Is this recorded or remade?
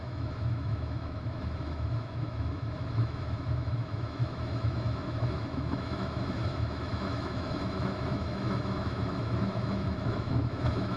remade